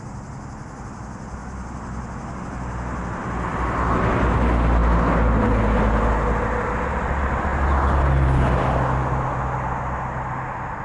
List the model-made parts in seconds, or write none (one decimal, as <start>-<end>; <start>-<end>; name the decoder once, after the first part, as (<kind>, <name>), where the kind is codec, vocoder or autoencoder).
none